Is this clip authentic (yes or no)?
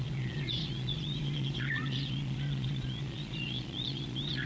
no